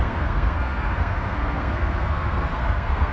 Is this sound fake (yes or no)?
yes